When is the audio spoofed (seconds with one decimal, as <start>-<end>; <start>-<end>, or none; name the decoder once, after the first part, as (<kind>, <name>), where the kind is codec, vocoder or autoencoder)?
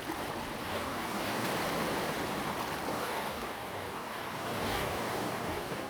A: 0.6-1.5 (codec, DAC); 2.9-5.9